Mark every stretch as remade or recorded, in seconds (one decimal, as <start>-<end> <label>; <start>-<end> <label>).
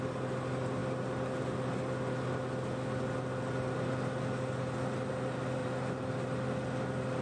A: 0.0-5.6 recorded; 5.6-6.1 remade; 6.1-7.2 recorded